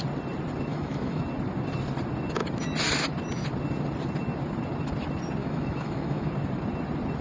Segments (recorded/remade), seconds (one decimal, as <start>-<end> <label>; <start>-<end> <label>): 0.0-0.7 recorded; 0.7-1.2 remade; 1.2-5.4 recorded; 5.4-6.3 remade; 6.3-7.2 recorded